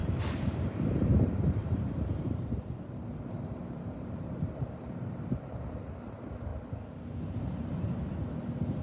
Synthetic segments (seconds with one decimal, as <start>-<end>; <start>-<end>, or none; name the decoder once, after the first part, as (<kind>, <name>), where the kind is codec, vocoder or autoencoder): 0.0-1.2 (vocoder, BigVGAN v2); 1.6-4.2